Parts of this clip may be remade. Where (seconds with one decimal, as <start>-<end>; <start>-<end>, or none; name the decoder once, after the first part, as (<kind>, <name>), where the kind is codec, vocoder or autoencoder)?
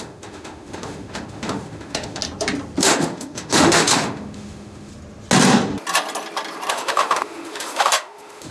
0.0-2.2 (autoencoder, DAC-VAE); 2.8-4.9; 6.7-8.5